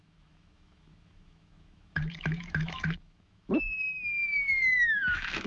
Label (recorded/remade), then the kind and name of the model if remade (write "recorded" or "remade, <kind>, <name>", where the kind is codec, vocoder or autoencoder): remade, autoencoder, DAC-VAE